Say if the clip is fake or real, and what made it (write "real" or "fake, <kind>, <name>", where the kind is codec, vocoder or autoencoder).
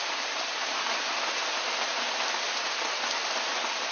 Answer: real